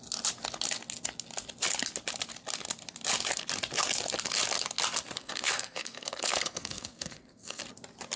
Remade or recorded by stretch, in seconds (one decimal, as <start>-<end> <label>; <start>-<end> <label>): 0.0-5.2 recorded; 5.2-7.6 remade; 7.6-8.2 recorded